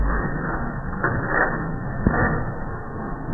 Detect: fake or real fake